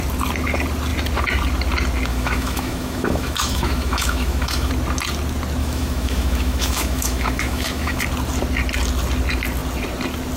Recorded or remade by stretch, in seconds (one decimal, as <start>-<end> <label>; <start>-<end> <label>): 0.0-2.1 recorded; 2.1-4.7 remade; 4.7-5.6 recorded; 5.6-8.0 remade; 8.0-10.4 recorded